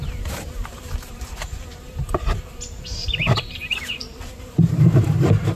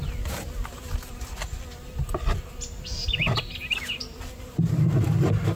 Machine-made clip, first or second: first